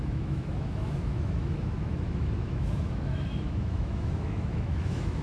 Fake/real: fake